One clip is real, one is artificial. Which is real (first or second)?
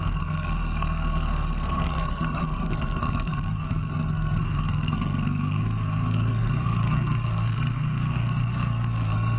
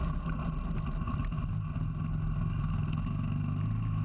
second